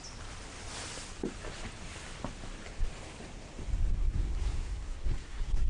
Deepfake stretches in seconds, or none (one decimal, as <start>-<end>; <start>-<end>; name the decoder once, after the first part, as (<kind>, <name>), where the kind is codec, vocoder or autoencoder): 4.0-5.7 (codec, SNAC)